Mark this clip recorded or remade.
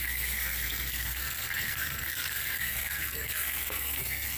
remade